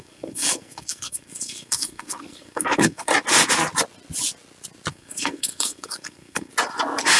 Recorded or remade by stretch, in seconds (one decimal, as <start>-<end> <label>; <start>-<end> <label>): 0.0-3.1 remade; 3.1-4.9 recorded; 4.9-6.5 remade; 6.5-7.2 recorded